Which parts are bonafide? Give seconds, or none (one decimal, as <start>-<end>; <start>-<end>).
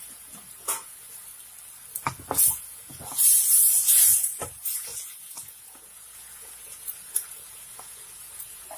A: 1.3-2.5